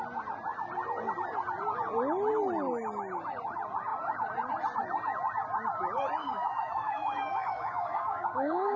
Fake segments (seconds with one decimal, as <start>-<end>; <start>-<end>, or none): 6.2-8.8